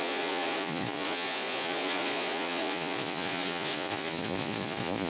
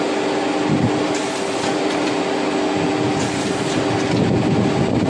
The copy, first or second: first